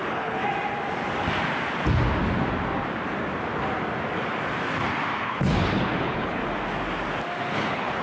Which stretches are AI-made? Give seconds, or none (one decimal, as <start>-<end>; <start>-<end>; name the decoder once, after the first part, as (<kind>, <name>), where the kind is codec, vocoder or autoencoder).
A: 0.0-0.4 (codec, HILCodec); 5.2-6.4; 7.5-8.0